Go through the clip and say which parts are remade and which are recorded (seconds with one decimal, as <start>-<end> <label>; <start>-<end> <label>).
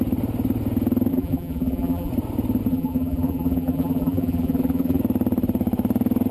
0.0-1.1 recorded; 1.1-2.1 remade; 2.1-2.7 recorded; 2.7-5.0 remade; 5.0-6.3 recorded